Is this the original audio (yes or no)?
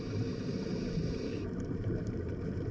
no